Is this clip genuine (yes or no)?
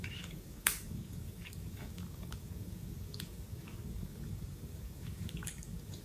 no